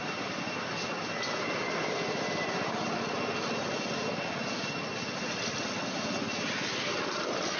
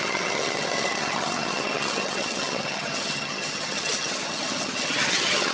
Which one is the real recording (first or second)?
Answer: first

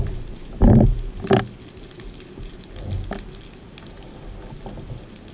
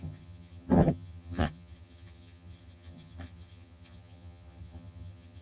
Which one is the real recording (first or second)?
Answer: first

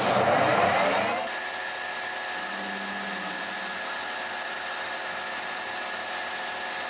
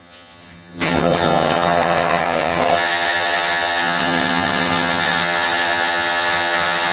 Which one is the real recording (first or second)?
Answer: first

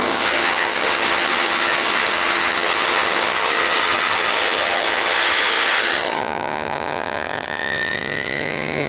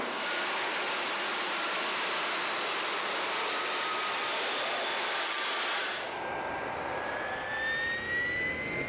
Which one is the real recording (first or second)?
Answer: second